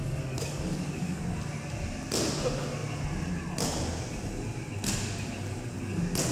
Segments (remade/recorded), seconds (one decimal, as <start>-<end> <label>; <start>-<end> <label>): 0.0-1.2 remade; 1.2-6.3 recorded